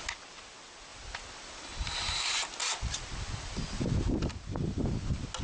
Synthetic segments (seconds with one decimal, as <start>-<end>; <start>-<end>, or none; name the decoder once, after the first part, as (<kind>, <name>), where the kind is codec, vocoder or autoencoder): none